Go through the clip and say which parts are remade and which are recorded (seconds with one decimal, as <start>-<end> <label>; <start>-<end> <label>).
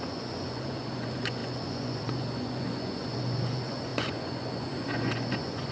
0.0-5.7 remade